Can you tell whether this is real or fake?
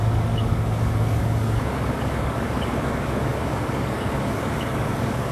fake